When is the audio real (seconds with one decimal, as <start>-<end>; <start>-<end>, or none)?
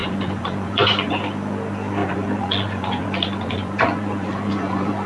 1.1-2.0